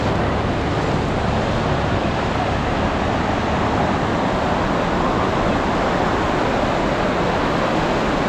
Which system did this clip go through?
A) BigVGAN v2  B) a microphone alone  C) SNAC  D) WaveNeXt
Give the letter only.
B